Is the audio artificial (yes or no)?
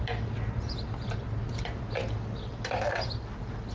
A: no